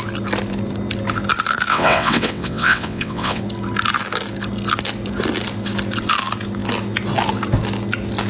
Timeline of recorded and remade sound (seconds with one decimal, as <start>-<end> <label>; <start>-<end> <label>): 0.0-1.7 recorded; 1.7-3.4 remade; 3.4-8.3 recorded